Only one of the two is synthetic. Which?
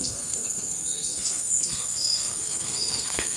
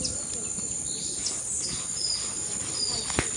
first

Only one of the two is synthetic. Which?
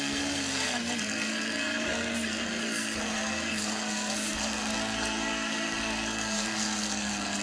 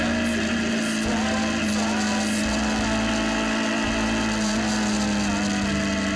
first